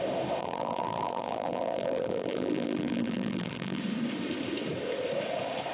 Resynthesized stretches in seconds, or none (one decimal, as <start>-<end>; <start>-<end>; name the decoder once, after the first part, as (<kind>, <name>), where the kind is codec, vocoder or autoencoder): 0.4-3.8 (vocoder, BigVGAN v2)